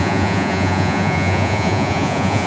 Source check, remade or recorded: remade